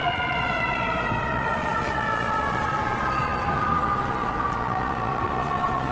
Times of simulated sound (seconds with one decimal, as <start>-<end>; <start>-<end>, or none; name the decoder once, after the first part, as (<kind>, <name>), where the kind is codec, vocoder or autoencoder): 0.0-5.9 (vocoder, Vocos)